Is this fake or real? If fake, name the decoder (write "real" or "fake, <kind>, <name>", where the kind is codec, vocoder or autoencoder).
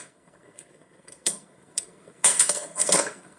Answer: fake, codec, SNAC